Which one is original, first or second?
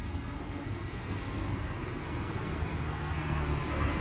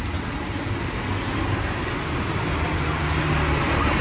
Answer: second